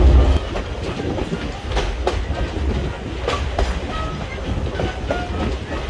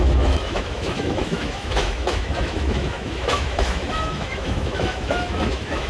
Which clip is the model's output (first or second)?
second